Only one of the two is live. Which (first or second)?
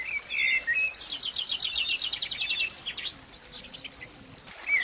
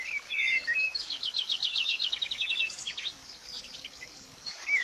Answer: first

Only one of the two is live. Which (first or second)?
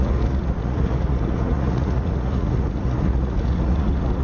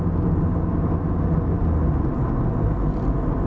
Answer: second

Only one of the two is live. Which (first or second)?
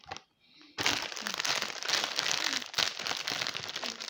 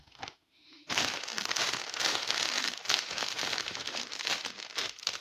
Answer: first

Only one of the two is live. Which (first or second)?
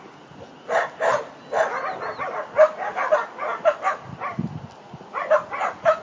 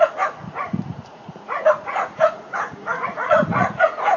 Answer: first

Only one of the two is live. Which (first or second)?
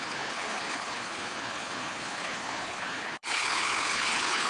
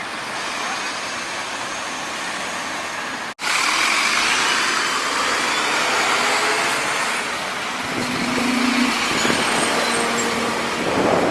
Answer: second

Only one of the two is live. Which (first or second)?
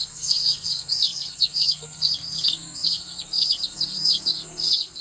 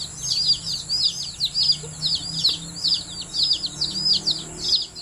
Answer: second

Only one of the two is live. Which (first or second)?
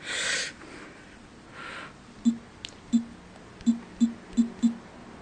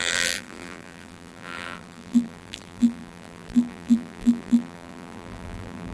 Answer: first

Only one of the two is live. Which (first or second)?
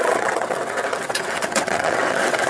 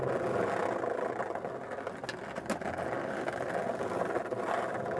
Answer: second